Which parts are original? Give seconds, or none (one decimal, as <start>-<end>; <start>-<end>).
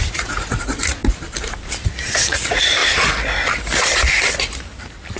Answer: 1.0-2.2; 2.8-5.2